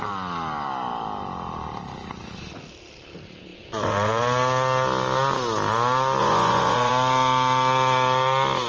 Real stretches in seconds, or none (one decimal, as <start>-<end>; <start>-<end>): 0.0-3.5; 4.2-6.2; 6.9-8.7

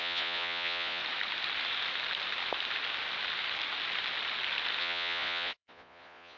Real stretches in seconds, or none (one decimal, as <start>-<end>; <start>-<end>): 1.0-4.8

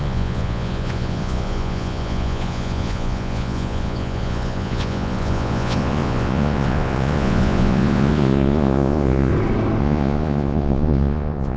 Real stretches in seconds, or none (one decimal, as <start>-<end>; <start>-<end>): 9.3-9.8